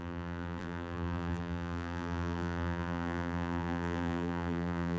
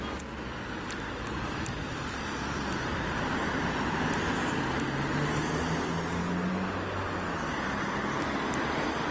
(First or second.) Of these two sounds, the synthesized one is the first